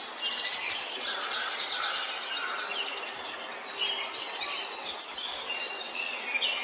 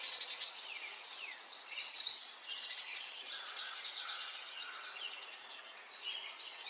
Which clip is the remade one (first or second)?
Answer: second